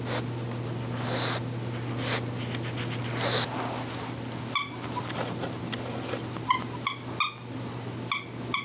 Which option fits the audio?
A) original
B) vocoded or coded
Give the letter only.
A